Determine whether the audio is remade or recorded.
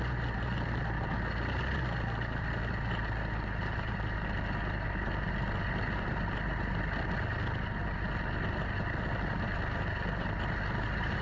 recorded